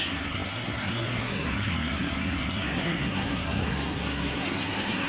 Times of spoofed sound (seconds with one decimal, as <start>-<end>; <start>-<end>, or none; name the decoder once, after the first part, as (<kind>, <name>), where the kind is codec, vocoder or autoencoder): 0.0-5.1 (codec, SNAC)